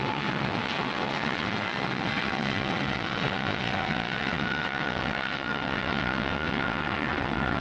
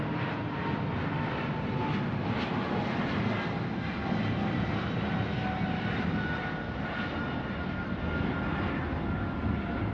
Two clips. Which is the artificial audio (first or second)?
first